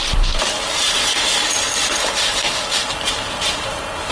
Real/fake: fake